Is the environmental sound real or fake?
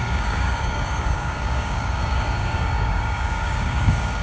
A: fake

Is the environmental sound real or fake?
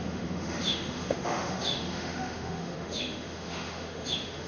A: fake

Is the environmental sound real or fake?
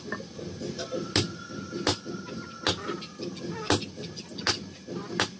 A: real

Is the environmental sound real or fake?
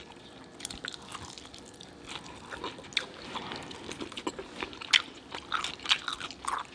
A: real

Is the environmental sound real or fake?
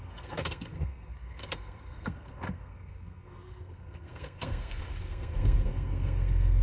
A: fake